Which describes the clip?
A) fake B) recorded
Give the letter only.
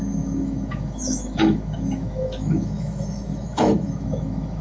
A